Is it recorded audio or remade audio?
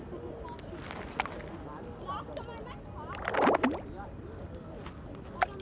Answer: recorded